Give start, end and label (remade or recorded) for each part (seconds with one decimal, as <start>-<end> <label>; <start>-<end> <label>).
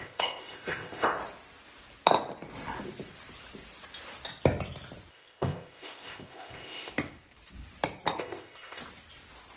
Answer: 0.0-1.2 remade; 1.2-5.1 recorded; 5.1-6.9 remade; 6.9-8.2 recorded; 8.2-8.8 remade; 8.8-9.6 recorded